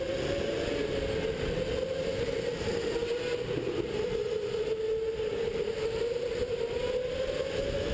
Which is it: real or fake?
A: real